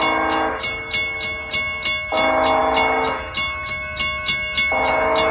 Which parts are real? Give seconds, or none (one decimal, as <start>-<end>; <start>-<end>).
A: 0.0-5.3